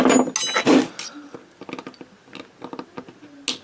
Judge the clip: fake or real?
real